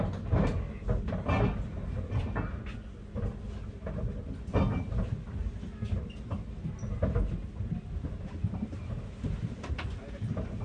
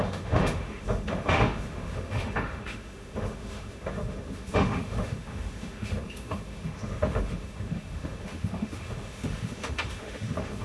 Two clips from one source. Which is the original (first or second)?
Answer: first